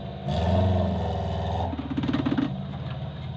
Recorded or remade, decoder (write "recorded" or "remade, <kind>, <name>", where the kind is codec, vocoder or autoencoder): recorded